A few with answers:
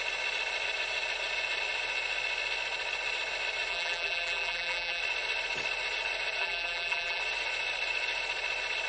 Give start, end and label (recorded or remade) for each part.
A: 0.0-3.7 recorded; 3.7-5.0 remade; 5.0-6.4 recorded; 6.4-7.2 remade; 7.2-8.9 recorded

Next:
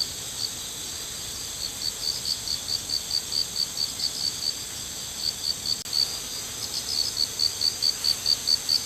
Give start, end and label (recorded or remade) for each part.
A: 0.0-8.9 recorded

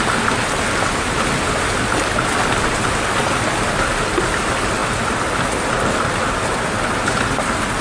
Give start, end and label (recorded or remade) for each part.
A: 0.0-7.8 recorded